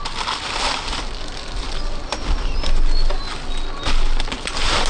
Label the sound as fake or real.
real